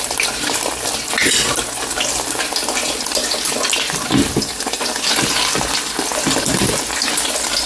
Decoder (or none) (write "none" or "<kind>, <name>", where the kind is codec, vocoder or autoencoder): none